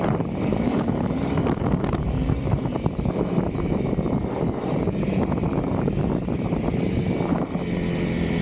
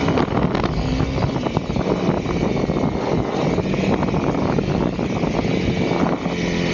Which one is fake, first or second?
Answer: first